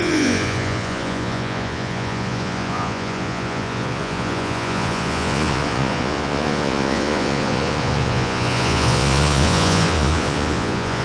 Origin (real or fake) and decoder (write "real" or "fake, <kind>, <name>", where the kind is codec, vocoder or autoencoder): fake, vocoder, Vocos